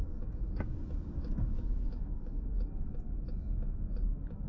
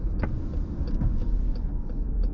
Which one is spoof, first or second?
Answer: first